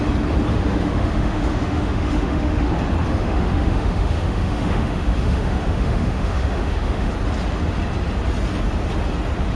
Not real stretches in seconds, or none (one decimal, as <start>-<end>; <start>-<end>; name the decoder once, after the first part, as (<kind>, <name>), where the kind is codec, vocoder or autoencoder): 0.5-2.7 (autoencoder, DAC-VAE); 3.1-7.1